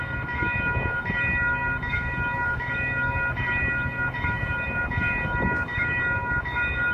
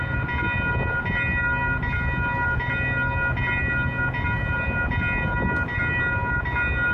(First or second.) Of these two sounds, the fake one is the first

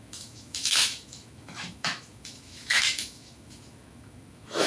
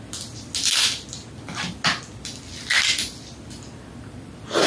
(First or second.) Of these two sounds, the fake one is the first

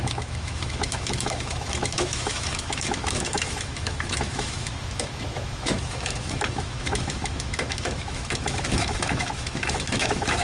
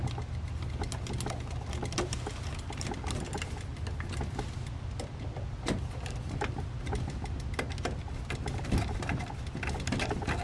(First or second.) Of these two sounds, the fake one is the first